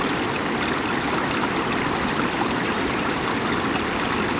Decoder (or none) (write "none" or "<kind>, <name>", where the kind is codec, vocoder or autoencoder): none